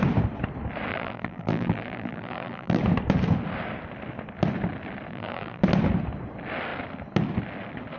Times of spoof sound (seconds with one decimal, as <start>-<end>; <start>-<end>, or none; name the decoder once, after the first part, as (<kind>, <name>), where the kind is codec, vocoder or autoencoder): 0.9-2.8 (vocoder, BigVGAN v2); 5.1-5.6